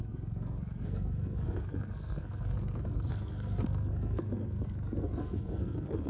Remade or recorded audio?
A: remade